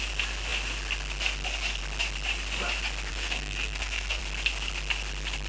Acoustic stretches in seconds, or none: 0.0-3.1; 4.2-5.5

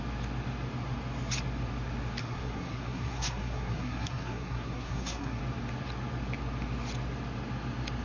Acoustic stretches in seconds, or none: 0.0-2.2; 5.4-8.0

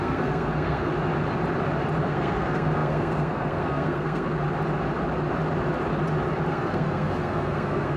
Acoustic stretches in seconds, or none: 0.9-2.0; 4.3-6.5